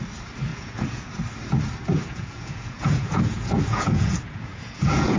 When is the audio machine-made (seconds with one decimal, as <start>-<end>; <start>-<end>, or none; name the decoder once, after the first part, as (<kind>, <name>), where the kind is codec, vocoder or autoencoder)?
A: 0.5-1.2 (vocoder, Vocos); 1.9-5.2